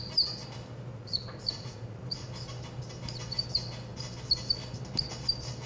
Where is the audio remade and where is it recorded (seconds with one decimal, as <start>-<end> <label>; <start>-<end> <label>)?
0.0-0.9 recorded; 0.9-2.3 remade; 2.3-5.7 recorded